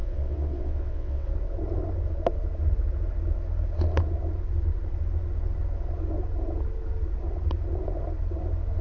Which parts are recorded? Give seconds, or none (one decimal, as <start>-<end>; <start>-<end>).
1.3-8.8